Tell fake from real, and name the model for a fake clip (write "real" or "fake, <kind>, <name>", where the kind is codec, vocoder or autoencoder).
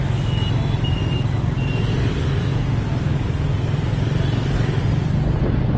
real